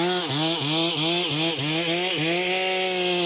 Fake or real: real